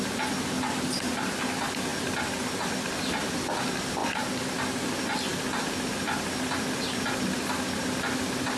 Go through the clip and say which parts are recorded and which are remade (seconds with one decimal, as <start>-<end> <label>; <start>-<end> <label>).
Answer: 0.0-8.6 recorded